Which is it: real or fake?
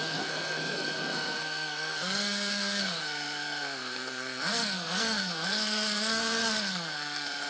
fake